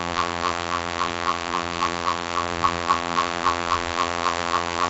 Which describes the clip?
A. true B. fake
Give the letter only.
B